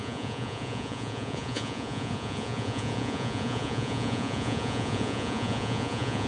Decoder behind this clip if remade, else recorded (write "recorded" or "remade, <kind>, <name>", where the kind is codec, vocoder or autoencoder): remade, vocoder, Vocos